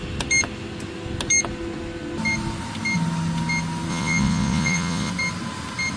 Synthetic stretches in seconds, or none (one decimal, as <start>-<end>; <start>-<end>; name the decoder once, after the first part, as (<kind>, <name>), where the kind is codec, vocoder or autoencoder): 3.9-5.1 (vocoder, Vocos)